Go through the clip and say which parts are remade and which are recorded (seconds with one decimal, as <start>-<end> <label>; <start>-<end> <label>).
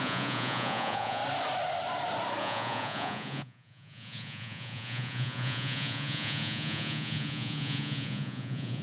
0.0-1.2 remade; 1.2-2.4 recorded; 2.4-8.8 remade